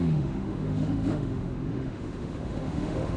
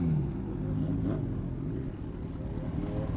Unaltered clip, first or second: second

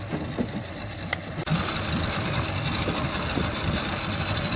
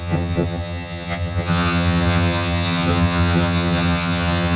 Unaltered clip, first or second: first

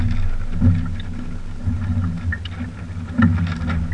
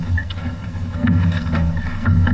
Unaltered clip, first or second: first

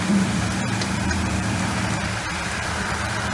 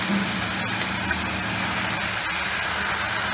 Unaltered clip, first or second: second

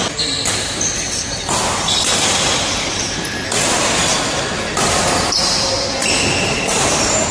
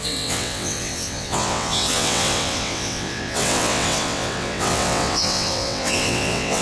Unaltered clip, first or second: first